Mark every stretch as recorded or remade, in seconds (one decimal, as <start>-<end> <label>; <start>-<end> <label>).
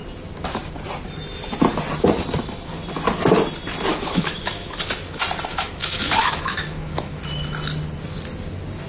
0.0-3.9 recorded; 3.9-4.8 remade; 4.8-5.5 recorded; 5.5-7.2 remade; 7.2-8.9 recorded